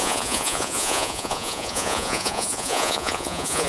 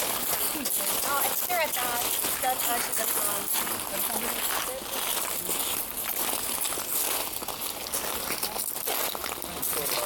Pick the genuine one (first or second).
second